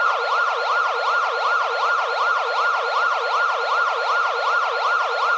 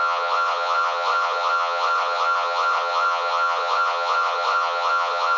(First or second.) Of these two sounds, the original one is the first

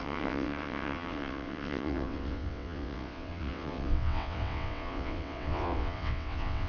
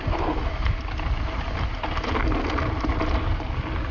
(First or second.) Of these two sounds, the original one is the second